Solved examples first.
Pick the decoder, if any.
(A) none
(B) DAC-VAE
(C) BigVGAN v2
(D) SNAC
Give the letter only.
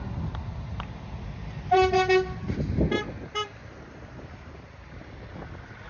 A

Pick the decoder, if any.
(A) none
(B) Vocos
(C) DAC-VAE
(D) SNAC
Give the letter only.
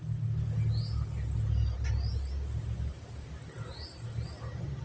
A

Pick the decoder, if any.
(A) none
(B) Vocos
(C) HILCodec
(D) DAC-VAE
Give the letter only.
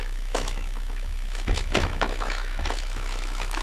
D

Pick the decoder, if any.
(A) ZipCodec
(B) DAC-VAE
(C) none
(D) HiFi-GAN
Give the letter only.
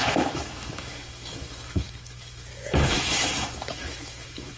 B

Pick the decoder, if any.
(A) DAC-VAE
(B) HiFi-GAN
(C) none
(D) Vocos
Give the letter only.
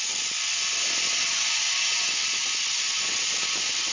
C